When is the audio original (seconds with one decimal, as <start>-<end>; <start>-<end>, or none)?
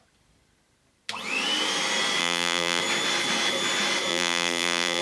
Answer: 0.0-2.2; 2.8-4.1